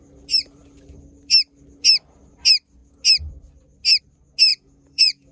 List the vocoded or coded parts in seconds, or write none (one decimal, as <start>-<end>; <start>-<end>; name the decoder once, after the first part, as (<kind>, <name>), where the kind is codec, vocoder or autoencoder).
4.5-5.3 (vocoder, Vocos)